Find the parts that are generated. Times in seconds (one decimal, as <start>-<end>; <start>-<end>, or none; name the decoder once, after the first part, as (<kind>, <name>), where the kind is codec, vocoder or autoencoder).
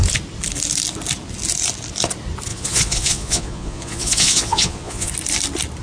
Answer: 2.5-5.1 (vocoder, Vocos)